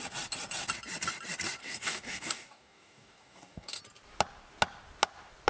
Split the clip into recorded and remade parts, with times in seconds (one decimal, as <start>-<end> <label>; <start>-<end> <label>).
0.0-1.6 recorded; 1.6-3.8 remade; 3.8-5.5 recorded